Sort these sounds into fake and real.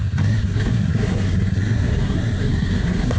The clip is fake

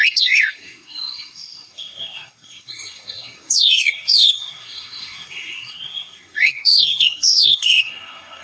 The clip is fake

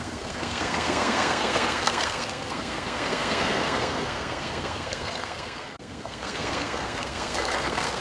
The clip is fake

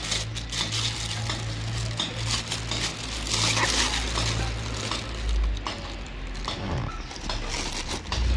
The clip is real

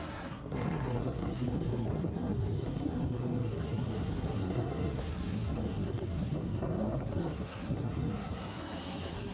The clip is fake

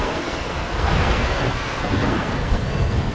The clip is fake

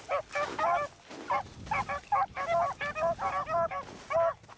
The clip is real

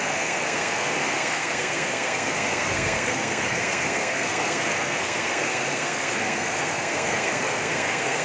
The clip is fake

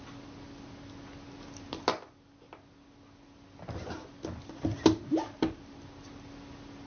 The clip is real